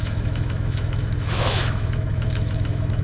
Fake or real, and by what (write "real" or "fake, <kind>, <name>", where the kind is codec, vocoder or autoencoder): fake, autoencoder, DAC-VAE